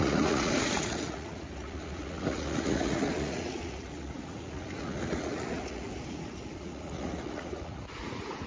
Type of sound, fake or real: fake